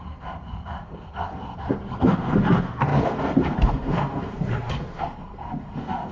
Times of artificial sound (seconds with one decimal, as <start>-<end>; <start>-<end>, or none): 0.0-6.1